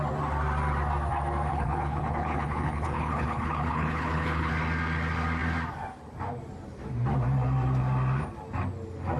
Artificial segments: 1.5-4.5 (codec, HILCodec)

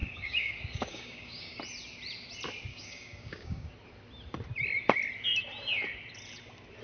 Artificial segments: 0.0-1.6 (codec, DAC); 2.7-3.7

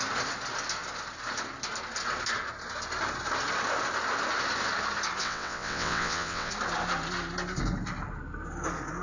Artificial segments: 5.2-6.5 (vocoder, WaveNeXt)